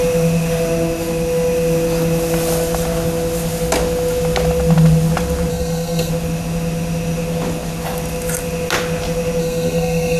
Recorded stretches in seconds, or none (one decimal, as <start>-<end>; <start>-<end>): 0.0-5.5; 6.1-9.4